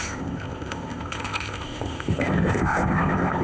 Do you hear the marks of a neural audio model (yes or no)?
yes